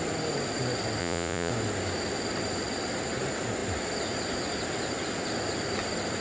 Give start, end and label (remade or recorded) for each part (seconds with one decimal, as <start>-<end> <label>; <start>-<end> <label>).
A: 0.0-1.0 recorded; 1.0-1.5 remade; 1.5-6.2 recorded